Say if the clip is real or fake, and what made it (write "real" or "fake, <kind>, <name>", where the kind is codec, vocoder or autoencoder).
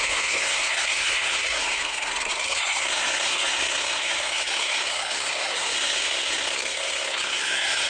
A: fake, codec, SNAC